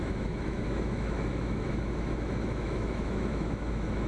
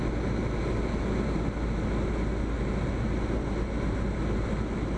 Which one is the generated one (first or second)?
first